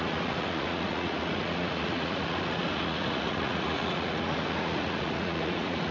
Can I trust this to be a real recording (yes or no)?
no